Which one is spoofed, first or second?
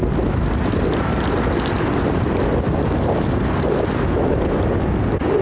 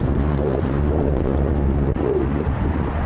second